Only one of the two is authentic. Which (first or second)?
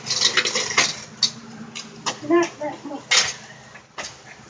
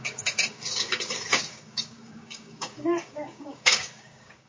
first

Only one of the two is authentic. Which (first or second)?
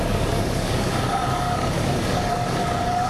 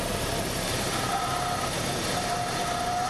second